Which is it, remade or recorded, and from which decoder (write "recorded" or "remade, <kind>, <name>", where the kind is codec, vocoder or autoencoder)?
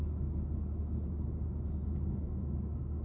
recorded